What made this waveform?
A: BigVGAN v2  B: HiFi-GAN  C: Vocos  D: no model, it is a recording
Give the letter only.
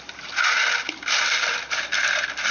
D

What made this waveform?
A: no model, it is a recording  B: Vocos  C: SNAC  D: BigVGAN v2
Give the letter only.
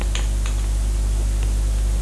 A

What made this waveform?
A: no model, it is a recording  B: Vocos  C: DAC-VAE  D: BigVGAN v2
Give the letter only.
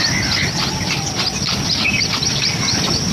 A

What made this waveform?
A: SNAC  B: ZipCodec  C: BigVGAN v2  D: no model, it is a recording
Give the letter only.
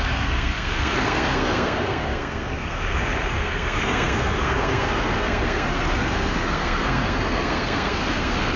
A